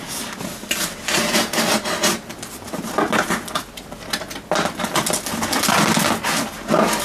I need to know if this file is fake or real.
real